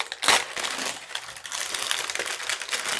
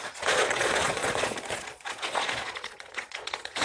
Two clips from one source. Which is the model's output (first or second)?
second